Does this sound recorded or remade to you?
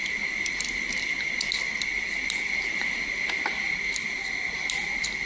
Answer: recorded